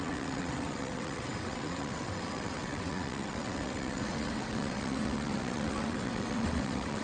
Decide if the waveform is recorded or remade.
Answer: remade